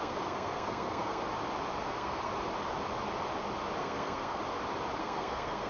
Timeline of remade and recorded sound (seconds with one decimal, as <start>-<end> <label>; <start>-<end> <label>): 0.0-1.2 remade; 1.2-1.8 recorded; 1.8-2.3 remade; 2.3-3.8 recorded; 3.8-4.4 remade; 4.4-5.0 recorded; 5.0-5.7 remade